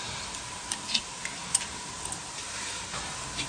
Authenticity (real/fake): real